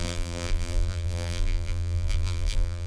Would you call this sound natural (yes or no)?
no